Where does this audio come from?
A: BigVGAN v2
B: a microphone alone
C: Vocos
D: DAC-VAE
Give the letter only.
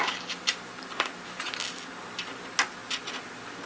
B